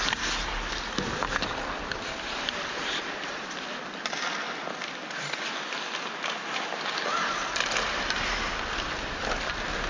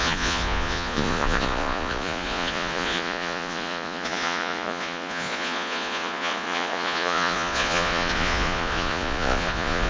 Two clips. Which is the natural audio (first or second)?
first